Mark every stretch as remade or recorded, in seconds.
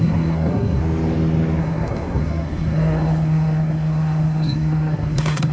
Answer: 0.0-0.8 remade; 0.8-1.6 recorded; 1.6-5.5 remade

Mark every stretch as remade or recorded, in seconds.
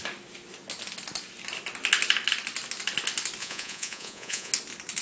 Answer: 0.0-3.4 recorded; 3.4-4.5 remade; 4.5-5.0 recorded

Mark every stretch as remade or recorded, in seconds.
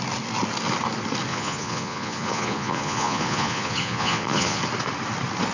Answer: 0.0-1.3 recorded; 1.3-4.6 remade; 4.6-5.5 recorded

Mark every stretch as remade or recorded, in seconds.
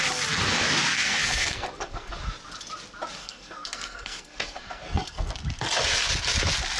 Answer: 0.0-0.9 recorded; 0.9-2.1 remade; 2.1-3.2 recorded; 3.2-5.3 remade; 5.3-6.8 recorded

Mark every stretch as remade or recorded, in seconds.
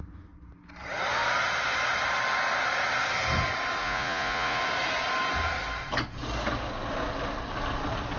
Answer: 0.0-3.8 recorded; 3.8-4.6 remade; 4.6-8.2 recorded